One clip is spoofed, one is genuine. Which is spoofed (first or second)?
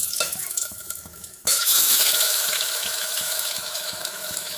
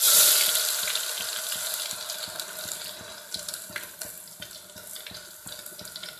first